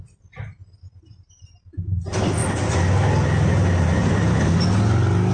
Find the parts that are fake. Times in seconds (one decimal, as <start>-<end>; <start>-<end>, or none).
none